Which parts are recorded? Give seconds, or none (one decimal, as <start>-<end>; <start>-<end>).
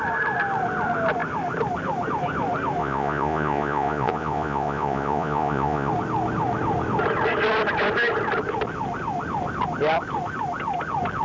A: 0.0-2.8; 5.9-11.2